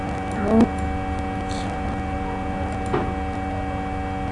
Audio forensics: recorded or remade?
recorded